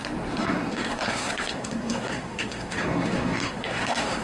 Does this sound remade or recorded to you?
remade